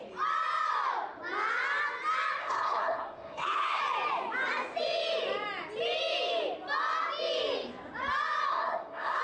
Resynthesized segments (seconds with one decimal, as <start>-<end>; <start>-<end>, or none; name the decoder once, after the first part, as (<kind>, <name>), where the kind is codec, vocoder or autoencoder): 2.4-3.8 (codec, SNAC); 8.5-9.2